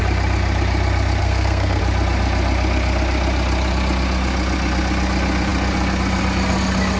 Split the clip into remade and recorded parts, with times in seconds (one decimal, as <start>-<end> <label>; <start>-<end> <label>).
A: 0.0-1.2 recorded; 1.2-1.8 remade; 1.8-7.0 recorded